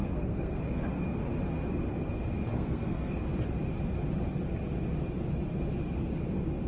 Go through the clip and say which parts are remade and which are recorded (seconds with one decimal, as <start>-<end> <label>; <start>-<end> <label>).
0.0-0.6 remade; 0.6-2.5 recorded; 2.5-3.2 remade; 3.2-6.7 recorded